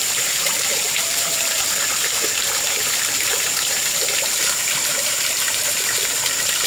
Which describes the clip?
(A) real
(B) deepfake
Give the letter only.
B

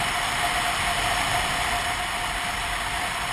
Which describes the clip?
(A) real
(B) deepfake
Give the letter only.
A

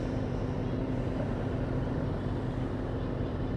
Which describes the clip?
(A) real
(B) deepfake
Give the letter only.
A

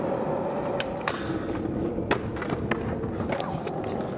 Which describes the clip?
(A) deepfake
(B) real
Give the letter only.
B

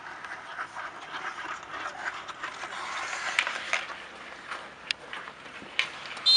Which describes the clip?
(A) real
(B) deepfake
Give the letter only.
A